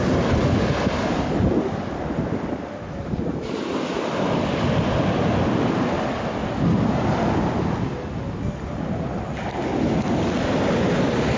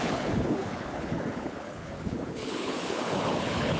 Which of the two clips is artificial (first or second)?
second